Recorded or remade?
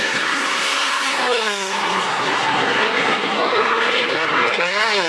remade